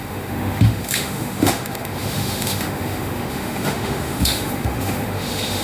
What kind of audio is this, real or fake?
fake